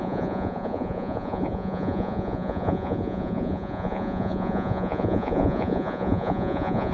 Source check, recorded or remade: remade